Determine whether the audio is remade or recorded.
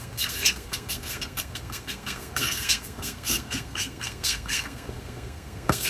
remade